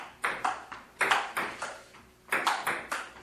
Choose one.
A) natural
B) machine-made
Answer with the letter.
A